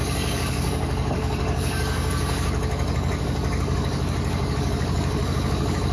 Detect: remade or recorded remade